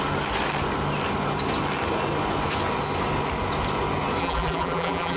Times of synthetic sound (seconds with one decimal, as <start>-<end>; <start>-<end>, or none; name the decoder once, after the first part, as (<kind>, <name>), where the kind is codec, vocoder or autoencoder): 4.2-5.2 (vocoder, BigVGAN v2)